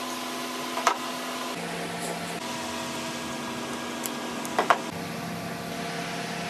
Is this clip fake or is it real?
real